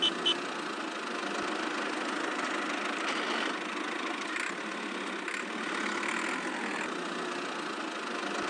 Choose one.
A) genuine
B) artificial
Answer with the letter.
A